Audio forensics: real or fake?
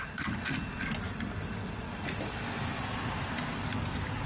real